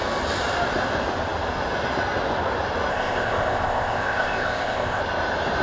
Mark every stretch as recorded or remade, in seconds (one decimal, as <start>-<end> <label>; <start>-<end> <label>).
0.0-2.9 recorded; 2.9-5.0 remade; 5.0-5.6 recorded